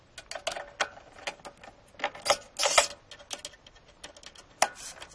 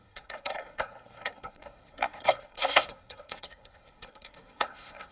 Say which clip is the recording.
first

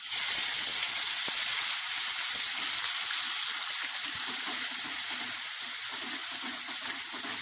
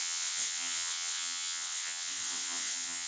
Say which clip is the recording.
first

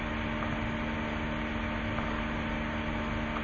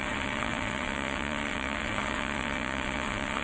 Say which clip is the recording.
first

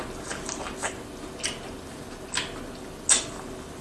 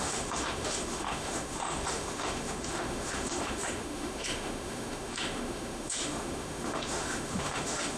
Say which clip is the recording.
first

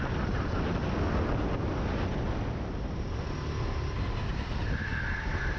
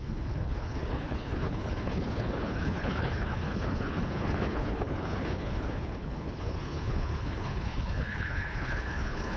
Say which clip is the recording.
first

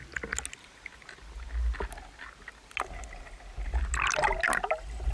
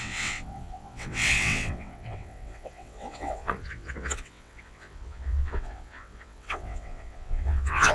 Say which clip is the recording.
first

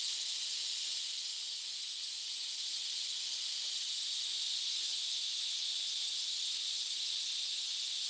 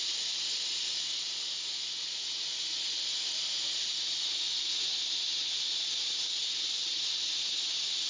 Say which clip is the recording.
second